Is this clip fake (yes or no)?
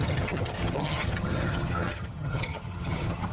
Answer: yes